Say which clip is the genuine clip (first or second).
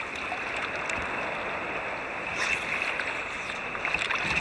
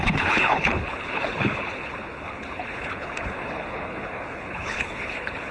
first